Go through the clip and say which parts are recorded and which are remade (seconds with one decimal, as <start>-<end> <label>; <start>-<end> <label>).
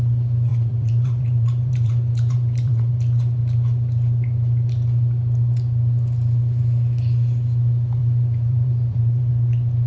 0.0-0.5 recorded; 0.5-2.9 remade; 2.9-8.0 recorded; 8.0-9.3 remade; 9.3-9.9 recorded